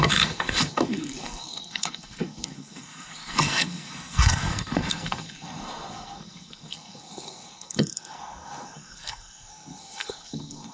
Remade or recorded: remade